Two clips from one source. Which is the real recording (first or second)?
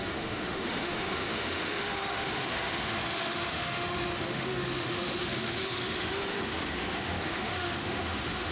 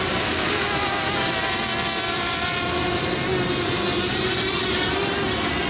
second